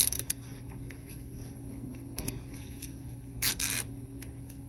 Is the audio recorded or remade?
remade